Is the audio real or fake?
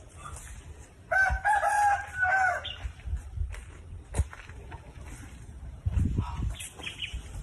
real